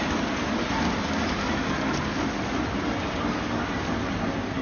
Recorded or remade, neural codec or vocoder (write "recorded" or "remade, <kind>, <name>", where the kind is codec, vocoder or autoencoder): recorded